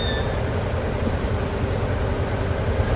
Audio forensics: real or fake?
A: real